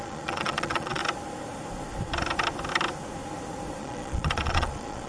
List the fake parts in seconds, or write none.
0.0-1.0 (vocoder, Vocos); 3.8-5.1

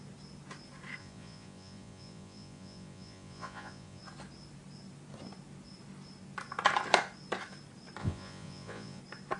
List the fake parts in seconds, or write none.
1.0-4.0 (vocoder, Vocos); 8.0-9.0

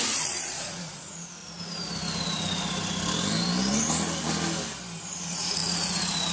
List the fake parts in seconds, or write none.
0.0-1.4 (vocoder, Vocos); 5.0-6.3

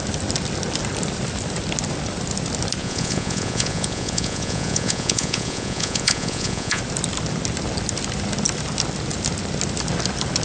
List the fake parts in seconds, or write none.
2.8-6.8 (vocoder, Vocos)

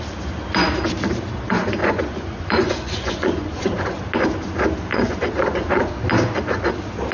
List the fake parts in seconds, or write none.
1.8-4.0 (vocoder, Vocos); 4.9-5.9

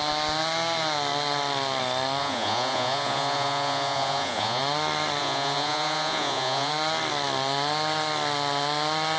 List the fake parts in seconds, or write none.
2.2-4.6 (vocoder, Vocos); 5.2-6.7

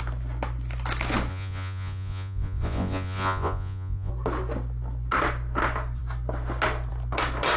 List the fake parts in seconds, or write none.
1.3-4.1 (vocoder, Vocos)